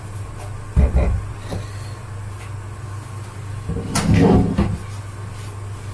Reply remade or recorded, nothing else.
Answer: recorded